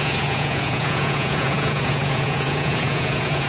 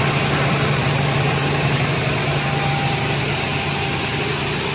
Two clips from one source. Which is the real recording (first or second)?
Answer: second